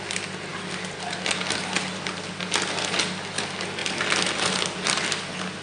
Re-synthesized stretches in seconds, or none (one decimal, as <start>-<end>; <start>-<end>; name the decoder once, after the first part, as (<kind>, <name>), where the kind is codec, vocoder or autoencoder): none